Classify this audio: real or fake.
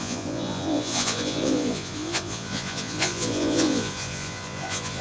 fake